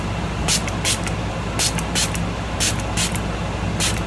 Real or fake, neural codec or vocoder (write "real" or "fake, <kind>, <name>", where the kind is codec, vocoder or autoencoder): real